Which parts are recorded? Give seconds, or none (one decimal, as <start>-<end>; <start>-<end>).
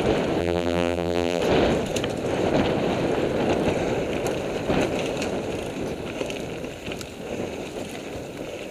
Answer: 0.0-0.4; 1.4-8.7